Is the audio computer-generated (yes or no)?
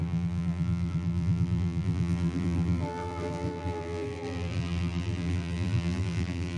yes